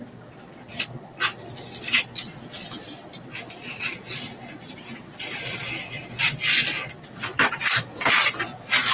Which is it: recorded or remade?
remade